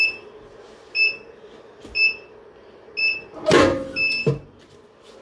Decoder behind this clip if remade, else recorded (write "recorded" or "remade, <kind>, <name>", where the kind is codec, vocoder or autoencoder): recorded